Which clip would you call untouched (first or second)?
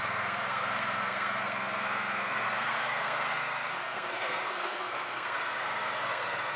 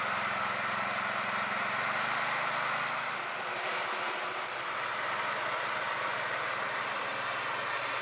second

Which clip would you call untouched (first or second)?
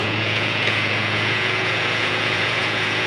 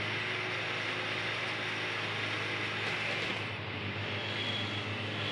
second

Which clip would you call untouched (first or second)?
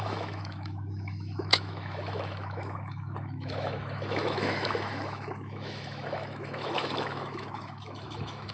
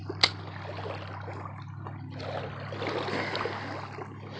second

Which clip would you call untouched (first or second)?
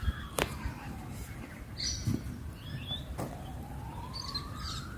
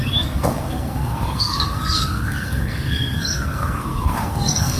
first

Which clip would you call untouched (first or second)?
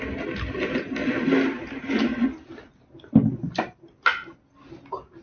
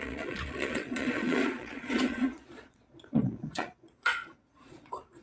first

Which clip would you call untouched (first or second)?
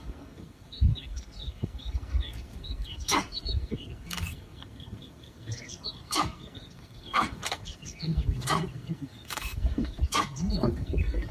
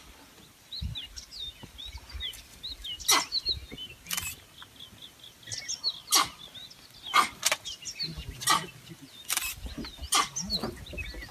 second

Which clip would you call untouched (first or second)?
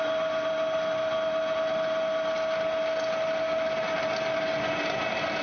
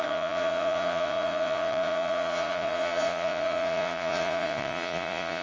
first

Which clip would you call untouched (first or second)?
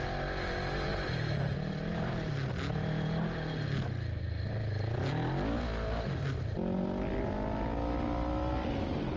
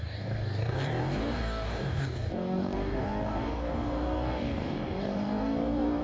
first